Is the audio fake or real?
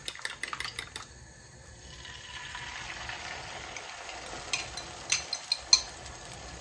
real